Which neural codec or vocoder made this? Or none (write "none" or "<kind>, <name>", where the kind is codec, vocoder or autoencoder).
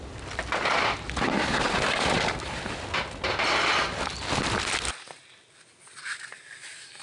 none